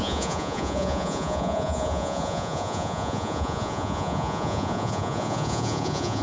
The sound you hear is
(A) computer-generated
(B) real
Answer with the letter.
A